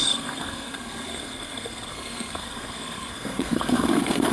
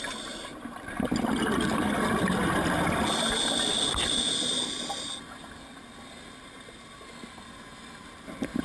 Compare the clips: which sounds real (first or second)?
second